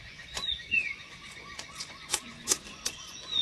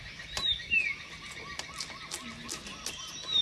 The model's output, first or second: first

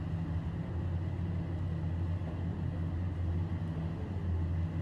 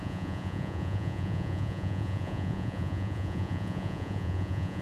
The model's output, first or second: second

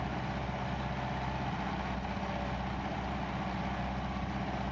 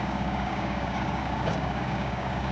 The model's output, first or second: second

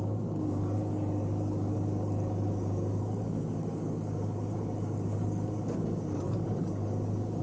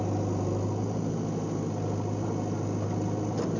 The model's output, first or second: first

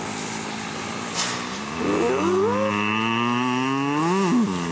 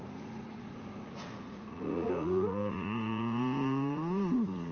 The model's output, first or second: second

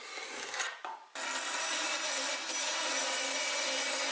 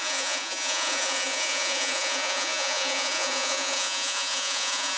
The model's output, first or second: second